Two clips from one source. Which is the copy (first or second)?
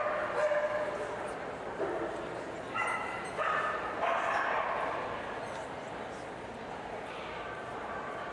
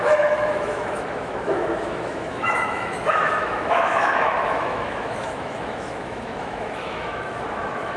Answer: second